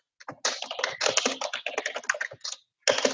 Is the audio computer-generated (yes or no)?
no